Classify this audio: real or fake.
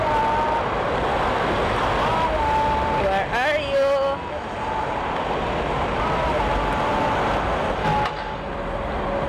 real